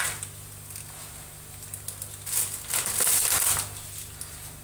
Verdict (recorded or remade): recorded